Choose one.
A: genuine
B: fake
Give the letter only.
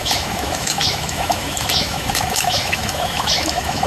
B